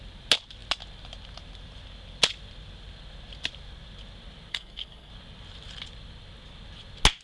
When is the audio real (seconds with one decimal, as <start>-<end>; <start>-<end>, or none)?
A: 0.0-4.5; 5.1-7.2

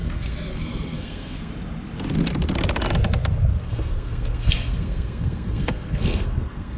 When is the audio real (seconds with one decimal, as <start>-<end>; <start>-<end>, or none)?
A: 1.5-3.5

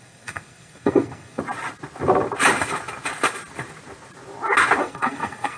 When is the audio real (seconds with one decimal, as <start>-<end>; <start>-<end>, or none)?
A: 1.4-4.8

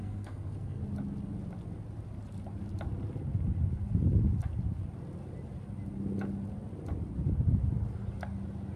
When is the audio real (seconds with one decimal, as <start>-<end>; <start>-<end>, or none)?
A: 0.8-8.8

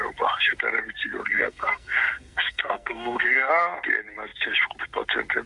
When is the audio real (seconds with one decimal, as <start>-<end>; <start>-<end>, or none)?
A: 0.0-1.3; 3.5-5.5